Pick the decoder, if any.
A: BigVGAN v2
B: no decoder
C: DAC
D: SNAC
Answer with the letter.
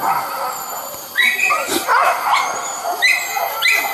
B